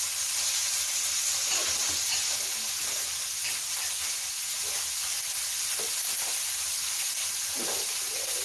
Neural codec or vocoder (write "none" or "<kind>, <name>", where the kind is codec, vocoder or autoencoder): none